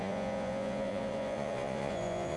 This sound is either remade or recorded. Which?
remade